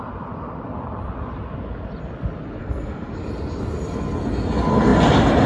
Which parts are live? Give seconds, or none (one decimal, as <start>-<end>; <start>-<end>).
0.0-2.6; 3.1-5.5